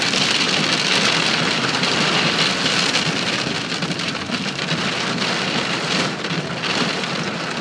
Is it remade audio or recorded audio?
recorded